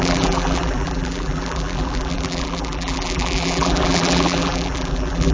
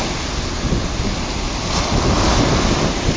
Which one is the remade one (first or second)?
first